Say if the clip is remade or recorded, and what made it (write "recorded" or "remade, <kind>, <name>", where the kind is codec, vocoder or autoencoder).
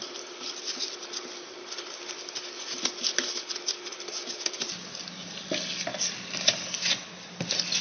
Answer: recorded